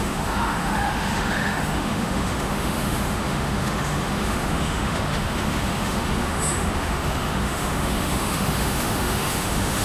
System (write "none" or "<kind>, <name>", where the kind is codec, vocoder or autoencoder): autoencoder, DAC-VAE